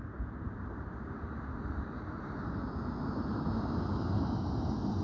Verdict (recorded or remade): recorded